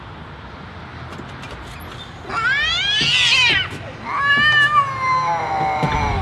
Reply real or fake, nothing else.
real